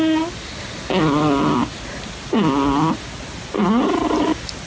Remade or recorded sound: recorded